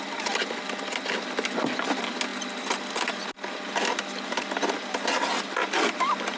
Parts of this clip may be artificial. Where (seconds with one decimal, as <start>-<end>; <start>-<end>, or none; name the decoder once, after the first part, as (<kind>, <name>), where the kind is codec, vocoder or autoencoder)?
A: none